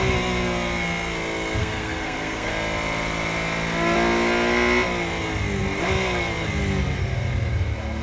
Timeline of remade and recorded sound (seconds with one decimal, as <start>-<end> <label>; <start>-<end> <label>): 0.0-1.6 recorded; 1.6-2.5 remade; 2.5-8.0 recorded